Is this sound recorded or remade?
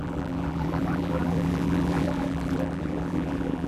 remade